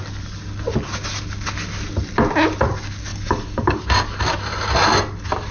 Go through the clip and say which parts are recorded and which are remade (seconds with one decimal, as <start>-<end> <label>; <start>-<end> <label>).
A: 0.0-3.1 recorded; 3.1-3.8 remade; 3.8-5.5 recorded